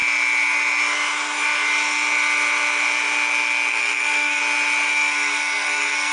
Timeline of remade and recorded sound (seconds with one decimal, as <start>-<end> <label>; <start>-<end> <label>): 0.0-3.7 recorded; 3.7-4.4 remade; 4.4-4.9 recorded; 4.9-6.1 remade